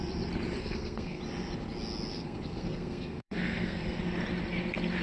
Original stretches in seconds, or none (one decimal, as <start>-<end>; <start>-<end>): 0.0-0.6; 1.2-2.1; 4.0-5.0